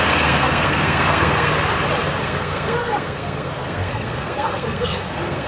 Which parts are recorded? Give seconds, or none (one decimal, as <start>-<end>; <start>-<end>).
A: 1.5-2.2